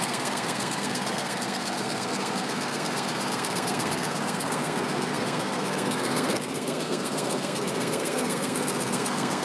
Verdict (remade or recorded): remade